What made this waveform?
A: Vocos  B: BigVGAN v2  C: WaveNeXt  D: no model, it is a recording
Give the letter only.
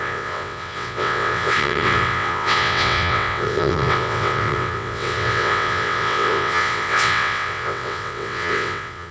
C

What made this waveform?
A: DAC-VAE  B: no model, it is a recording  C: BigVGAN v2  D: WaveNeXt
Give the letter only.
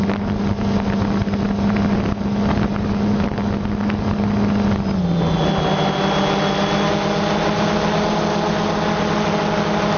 B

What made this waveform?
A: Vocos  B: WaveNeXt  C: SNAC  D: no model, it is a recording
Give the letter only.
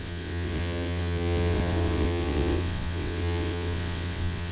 B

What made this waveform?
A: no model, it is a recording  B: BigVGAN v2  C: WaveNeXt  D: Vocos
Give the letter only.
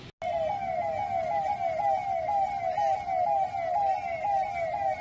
A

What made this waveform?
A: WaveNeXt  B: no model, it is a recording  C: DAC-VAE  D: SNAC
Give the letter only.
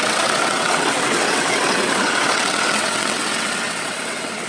A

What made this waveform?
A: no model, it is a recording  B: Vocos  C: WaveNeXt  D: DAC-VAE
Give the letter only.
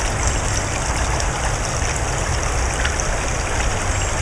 A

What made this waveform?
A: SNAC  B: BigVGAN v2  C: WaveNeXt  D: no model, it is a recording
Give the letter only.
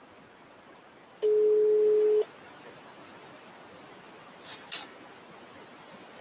D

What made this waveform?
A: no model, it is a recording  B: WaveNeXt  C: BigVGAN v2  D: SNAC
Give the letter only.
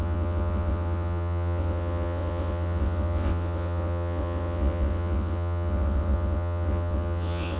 B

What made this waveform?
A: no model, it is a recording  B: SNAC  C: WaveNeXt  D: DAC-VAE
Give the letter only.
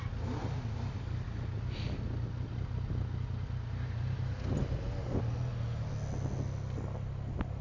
A